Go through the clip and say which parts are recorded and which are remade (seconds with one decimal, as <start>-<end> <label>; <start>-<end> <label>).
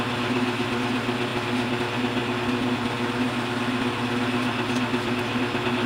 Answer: 0.0-5.9 recorded